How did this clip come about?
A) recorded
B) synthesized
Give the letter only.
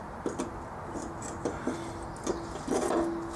A